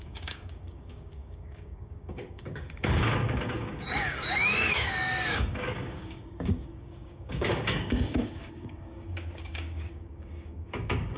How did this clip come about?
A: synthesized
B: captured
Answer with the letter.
A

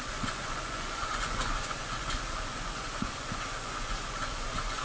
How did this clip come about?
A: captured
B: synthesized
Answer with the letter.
B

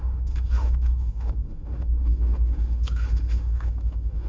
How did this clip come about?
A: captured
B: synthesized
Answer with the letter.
B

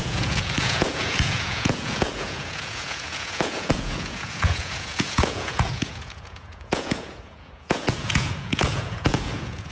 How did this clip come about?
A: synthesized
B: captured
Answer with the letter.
A